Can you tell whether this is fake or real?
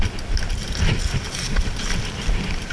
real